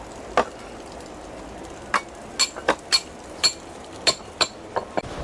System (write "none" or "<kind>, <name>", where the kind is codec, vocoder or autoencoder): none